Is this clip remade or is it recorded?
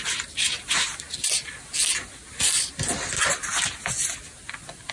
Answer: recorded